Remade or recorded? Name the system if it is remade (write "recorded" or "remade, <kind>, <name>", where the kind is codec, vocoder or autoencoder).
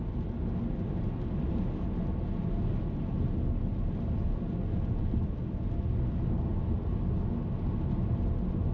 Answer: recorded